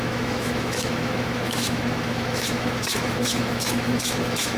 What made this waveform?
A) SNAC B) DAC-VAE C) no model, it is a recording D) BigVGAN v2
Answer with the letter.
B